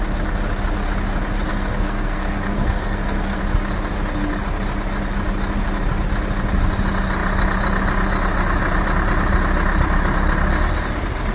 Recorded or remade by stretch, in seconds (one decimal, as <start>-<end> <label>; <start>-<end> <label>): 0.0-1.5 recorded; 1.5-3.4 remade; 3.4-11.3 recorded